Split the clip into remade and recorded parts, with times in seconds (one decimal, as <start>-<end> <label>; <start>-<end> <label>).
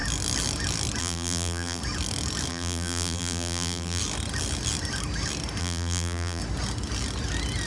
0.0-1.0 recorded; 1.0-1.8 remade; 1.8-2.5 recorded; 2.5-4.0 remade; 4.0-5.6 recorded; 5.6-6.4 remade; 6.4-7.7 recorded